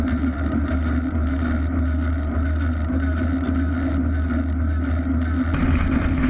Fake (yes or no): no